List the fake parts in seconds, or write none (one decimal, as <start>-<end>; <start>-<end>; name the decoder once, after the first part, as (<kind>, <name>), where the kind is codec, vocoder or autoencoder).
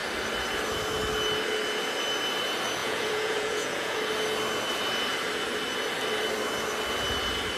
2.8-4.0 (vocoder, Vocos)